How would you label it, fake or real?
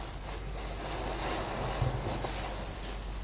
real